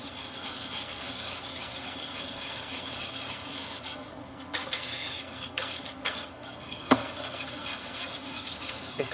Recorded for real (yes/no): no